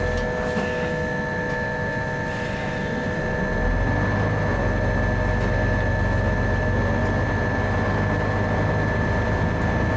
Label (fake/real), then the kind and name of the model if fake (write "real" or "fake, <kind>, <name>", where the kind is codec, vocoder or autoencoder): real